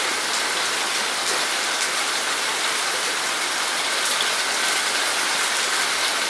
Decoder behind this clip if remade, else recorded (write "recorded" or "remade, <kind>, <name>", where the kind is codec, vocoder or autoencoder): recorded